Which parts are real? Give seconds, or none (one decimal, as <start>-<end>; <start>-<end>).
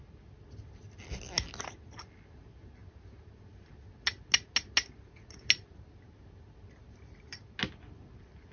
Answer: 0.0-8.5